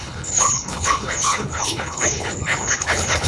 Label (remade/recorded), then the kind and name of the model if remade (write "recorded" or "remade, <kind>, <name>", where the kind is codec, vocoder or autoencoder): remade, codec, HILCodec